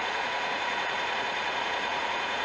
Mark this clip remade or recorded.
remade